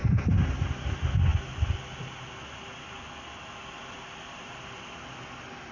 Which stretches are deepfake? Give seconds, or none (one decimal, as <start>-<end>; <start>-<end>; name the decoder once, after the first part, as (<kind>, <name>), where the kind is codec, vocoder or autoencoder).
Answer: 0.0-0.7 (vocoder, BigVGAN v2)